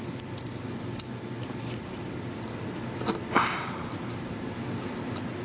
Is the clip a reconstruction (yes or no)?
no